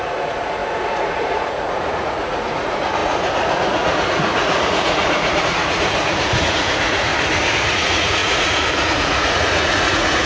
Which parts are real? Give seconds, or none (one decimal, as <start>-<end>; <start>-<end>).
7.1-7.7